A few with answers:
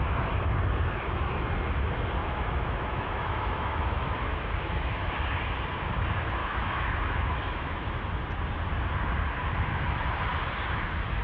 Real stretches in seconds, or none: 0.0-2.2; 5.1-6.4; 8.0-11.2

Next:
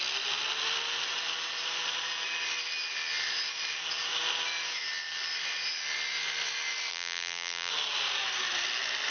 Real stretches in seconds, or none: 0.0-6.9; 7.7-9.1